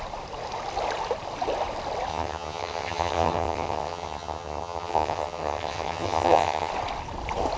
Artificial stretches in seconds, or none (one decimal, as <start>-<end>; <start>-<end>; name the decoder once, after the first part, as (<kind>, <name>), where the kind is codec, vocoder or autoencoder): 2.1-6.7 (vocoder, HiFi-GAN)